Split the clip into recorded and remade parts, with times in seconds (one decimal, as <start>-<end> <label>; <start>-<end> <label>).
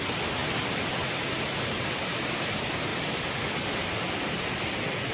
0.0-5.1 recorded